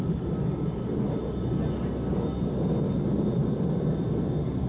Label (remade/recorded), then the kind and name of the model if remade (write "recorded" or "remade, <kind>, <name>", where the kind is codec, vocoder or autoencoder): recorded